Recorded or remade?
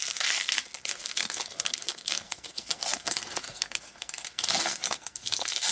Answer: remade